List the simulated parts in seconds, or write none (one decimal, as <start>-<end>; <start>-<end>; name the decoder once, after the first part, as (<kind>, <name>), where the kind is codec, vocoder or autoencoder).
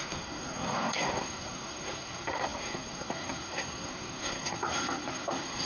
0.0-5.7 (codec, SNAC)